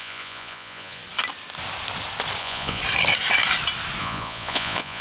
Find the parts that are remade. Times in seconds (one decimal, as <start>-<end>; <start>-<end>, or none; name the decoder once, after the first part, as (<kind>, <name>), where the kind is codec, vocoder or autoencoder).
0.0-1.0 (vocoder, Vocos); 2.4-2.8; 4.0-5.0